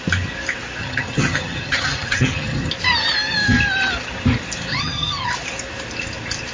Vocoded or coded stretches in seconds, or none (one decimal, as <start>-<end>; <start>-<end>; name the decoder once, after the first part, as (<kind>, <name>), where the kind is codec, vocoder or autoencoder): 0.8-2.7 (vocoder, HiFi-GAN); 4.7-5.3